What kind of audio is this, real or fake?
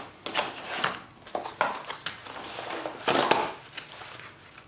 real